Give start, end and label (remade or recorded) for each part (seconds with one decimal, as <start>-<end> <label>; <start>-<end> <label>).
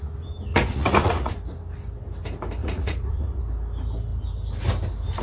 0.0-0.5 recorded; 0.5-1.3 remade; 1.3-2.6 recorded; 2.6-3.4 remade; 3.4-5.2 recorded